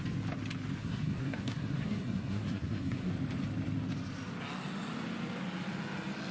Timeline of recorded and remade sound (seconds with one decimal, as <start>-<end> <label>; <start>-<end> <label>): 0.0-0.8 recorded; 0.8-3.1 remade; 3.1-6.3 recorded